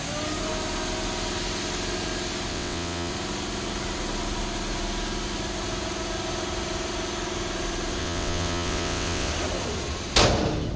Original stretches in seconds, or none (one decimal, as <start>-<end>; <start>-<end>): 0.0-2.5; 3.1-8.0; 9.3-10.8